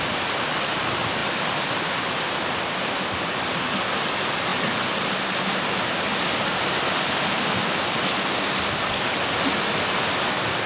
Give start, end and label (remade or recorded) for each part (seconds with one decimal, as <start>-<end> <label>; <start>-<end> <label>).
0.0-10.7 recorded